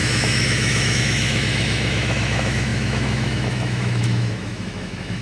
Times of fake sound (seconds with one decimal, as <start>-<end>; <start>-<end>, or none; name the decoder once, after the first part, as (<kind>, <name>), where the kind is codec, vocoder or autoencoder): 0.0-5.2 (autoencoder, DAC-VAE)